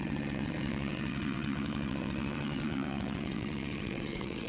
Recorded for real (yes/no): no